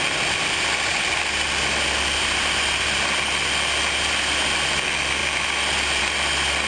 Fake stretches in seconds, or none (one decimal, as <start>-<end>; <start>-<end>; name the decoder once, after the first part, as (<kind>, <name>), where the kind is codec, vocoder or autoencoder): none

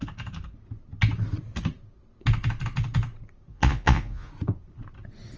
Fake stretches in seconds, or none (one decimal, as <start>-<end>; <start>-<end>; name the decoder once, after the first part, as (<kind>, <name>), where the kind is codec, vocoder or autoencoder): 3.5-4.3 (vocoder, Vocos)

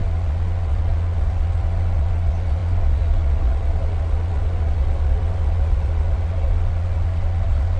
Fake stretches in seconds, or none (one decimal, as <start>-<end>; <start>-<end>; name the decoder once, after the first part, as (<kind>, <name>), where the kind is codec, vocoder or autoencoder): 0.0-7.8 (vocoder, Vocos)

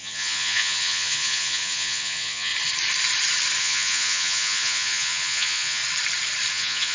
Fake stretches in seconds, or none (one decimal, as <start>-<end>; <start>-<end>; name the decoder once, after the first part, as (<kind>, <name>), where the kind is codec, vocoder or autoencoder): 0.0-2.5 (vocoder, Vocos); 3.6-5.8; 6.5-6.9

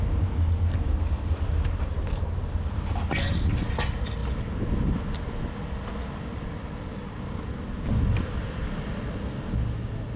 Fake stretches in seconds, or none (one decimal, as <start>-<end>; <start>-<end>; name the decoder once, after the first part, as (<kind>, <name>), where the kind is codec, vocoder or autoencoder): none

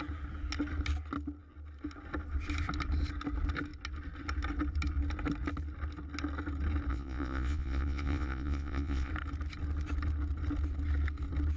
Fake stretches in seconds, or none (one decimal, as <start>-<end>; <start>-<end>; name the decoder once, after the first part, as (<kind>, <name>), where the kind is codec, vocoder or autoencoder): 6.9-9.1 (vocoder, Vocos)